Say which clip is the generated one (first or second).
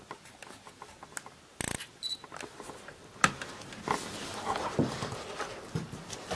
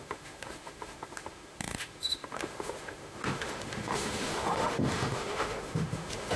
second